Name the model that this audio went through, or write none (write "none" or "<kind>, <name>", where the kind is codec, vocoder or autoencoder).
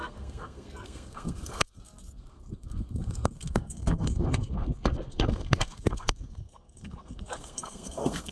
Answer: codec, SNAC